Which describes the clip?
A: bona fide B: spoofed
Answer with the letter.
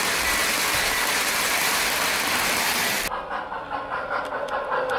A